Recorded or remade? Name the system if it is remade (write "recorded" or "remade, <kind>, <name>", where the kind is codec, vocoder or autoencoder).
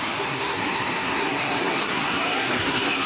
remade, codec, SNAC